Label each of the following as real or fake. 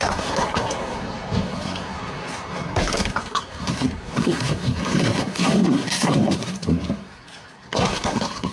fake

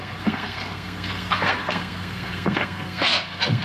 fake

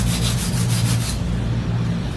real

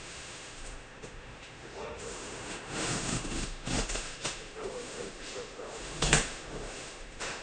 fake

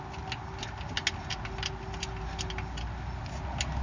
real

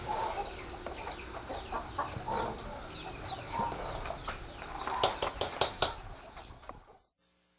real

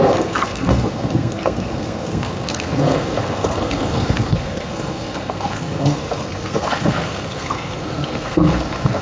fake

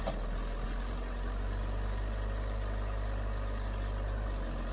real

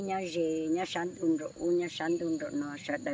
real